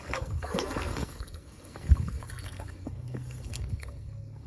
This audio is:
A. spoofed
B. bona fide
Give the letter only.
A